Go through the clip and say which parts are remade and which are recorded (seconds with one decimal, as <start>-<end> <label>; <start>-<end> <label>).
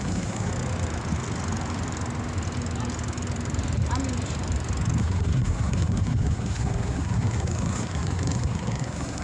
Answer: 0.0-0.5 remade; 0.5-5.0 recorded; 5.0-9.2 remade